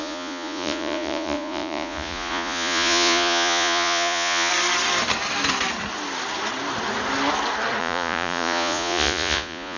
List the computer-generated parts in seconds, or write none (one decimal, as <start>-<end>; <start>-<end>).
0.0-4.5; 7.8-9.8